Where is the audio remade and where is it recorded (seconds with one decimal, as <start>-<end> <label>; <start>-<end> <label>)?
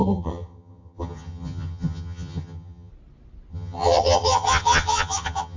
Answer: 0.0-2.9 remade; 2.9-3.5 recorded; 3.5-5.6 remade